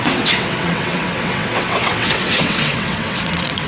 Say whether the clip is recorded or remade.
remade